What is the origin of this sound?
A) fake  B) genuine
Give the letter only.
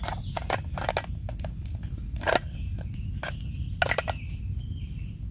B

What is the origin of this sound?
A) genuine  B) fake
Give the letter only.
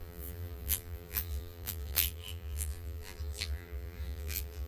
B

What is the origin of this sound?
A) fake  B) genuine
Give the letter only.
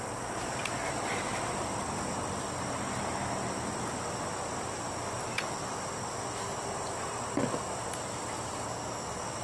B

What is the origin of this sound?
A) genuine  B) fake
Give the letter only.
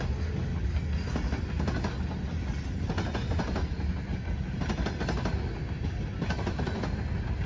A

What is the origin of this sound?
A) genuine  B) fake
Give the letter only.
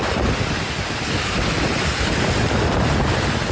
A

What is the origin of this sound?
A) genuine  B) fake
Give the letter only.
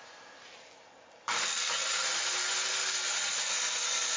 A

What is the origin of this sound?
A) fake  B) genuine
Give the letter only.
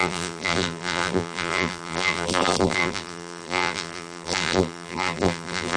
A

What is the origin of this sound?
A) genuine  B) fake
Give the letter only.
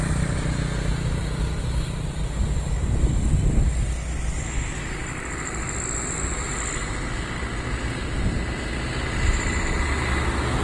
A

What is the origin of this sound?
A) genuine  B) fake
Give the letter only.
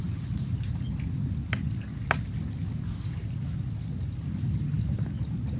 A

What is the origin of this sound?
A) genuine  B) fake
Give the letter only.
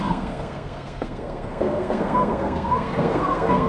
B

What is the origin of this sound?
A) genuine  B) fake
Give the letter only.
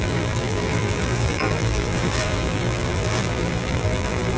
B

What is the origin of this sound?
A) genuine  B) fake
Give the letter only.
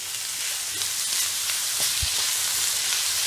A